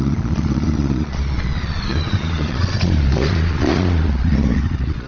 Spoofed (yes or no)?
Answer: yes